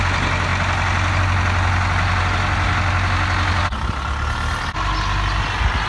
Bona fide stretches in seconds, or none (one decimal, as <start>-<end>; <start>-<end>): 0.0-5.9